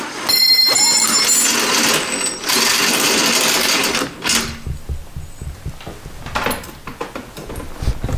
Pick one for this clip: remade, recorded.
recorded